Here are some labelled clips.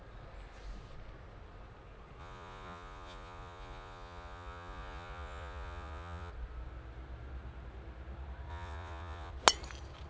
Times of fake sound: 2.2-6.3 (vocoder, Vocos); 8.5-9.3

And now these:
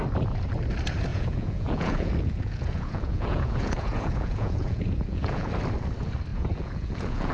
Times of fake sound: 1.1-5.5 (vocoder, Vocos); 6.3-7.3

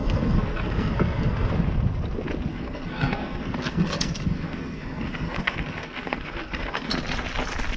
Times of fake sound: 0.0-1.5 (codec, SNAC); 2.5-6.9

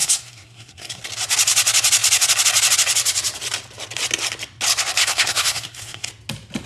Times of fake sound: 0.0-1.0 (codec, SNAC); 5.0-6.1